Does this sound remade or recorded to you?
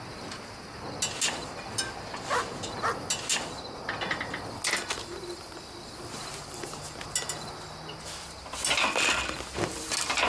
recorded